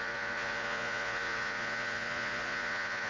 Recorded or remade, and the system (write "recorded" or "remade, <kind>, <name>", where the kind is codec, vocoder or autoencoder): remade, vocoder, Vocos